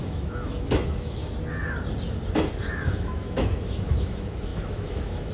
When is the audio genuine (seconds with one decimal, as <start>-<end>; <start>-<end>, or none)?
1.2-2.7